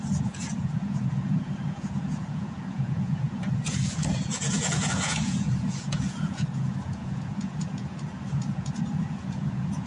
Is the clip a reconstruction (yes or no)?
yes